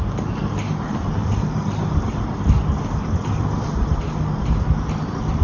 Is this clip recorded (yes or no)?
yes